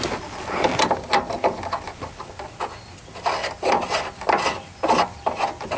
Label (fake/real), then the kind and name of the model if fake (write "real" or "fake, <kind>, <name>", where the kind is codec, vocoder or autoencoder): real